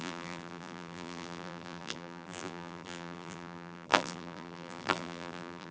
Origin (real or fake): fake